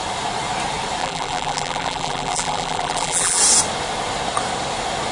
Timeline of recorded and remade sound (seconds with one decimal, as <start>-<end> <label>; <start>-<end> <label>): 0.0-1.0 recorded; 1.0-3.4 remade; 3.4-5.1 recorded